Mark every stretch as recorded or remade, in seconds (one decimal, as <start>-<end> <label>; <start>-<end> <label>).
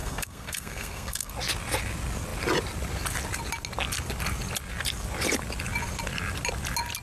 0.0-1.3 remade; 1.3-7.0 recorded